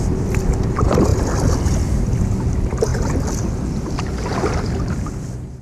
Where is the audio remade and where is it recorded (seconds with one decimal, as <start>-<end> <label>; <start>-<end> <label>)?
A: 0.0-5.6 recorded